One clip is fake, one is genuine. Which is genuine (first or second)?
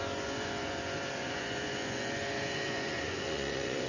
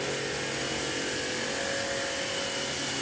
second